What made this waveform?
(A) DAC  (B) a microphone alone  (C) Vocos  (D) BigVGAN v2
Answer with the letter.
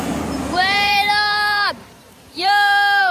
D